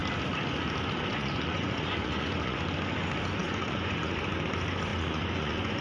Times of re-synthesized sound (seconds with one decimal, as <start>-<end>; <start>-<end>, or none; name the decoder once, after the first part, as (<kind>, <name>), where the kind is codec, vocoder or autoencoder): 1.1-2.6 (vocoder, Vocos); 3.4-4.2; 4.9-5.8